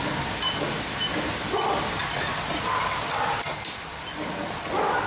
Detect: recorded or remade recorded